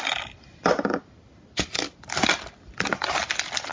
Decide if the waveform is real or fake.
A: real